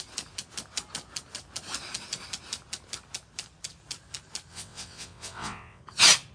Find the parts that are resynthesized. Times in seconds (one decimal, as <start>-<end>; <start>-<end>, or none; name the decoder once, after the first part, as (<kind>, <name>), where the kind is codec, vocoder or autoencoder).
4.5-5.8 (vocoder, WaveNeXt)